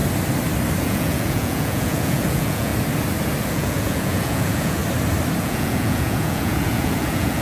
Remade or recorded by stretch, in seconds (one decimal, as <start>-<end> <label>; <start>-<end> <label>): 0.0-0.8 recorded; 0.8-2.7 remade; 2.7-3.5 recorded; 3.5-4.8 remade; 4.8-5.4 recorded; 5.4-7.4 remade